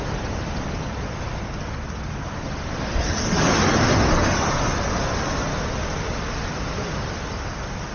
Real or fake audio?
real